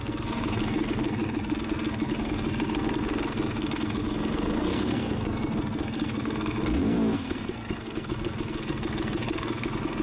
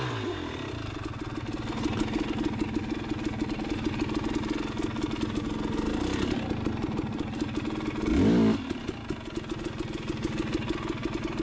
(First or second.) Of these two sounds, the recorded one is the second